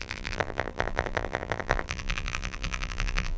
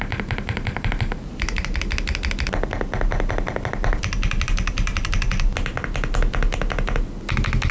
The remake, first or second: first